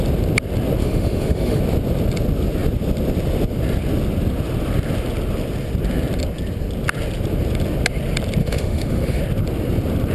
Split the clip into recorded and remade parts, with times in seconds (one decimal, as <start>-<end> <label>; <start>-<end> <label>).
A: 0.0-0.8 recorded; 0.8-1.6 remade; 1.6-8.4 recorded; 8.4-9.2 remade; 9.2-10.1 recorded